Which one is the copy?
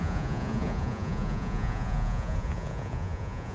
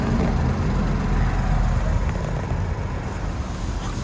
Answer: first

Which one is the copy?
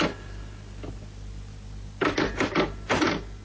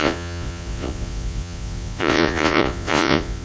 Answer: second